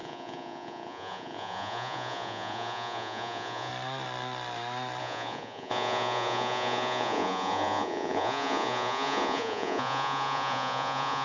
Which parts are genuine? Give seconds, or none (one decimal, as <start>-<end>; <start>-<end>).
3.7-5.0